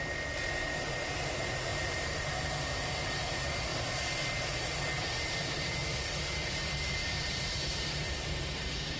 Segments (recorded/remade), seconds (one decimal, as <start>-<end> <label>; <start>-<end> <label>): 0.0-1.7 recorded; 1.7-2.9 remade; 2.9-7.0 recorded; 7.0-8.5 remade; 8.5-9.0 recorded